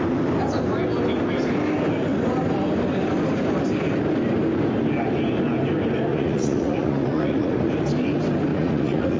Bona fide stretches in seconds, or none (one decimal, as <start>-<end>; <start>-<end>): 0.0-6.1; 7.7-8.5